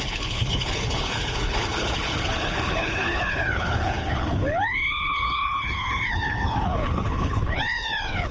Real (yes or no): no